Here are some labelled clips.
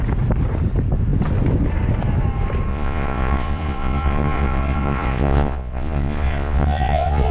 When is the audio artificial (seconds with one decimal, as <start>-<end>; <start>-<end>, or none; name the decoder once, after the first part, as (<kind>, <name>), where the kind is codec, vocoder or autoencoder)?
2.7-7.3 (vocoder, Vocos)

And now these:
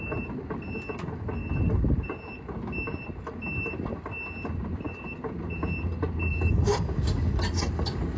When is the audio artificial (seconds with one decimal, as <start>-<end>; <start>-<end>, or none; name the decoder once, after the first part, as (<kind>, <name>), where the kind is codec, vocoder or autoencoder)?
none

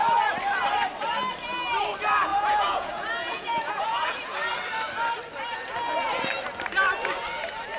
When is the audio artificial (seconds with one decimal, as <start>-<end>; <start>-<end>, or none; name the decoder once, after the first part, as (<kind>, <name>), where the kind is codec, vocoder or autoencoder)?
2.3-4.4 (vocoder, Vocos)

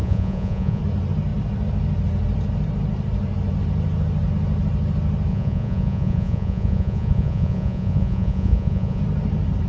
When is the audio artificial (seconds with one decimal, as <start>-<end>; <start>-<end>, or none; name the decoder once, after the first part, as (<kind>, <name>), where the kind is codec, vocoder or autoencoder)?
0.0-0.8 (vocoder, Vocos); 5.3-9.0

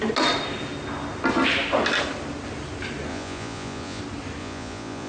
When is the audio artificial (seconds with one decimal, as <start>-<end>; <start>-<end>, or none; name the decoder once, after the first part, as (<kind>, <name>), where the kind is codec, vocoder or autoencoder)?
3.1-4.0 (vocoder, Vocos); 4.4-5.1

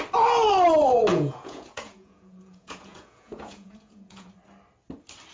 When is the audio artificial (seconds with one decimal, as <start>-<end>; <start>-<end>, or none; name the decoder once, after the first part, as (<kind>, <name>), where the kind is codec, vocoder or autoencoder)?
1.1-4.3 (vocoder, Vocos)

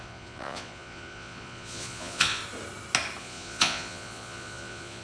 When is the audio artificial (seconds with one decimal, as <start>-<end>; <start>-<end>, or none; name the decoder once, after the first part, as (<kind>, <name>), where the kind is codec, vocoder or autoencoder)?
0.0-2.4 (vocoder, Vocos); 3.2-5.0

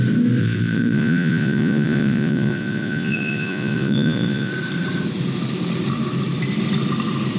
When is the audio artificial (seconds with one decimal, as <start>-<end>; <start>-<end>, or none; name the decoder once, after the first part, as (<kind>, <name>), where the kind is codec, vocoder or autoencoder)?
0.4-4.5 (vocoder, Vocos)